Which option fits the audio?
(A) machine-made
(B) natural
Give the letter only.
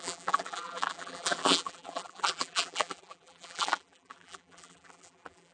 A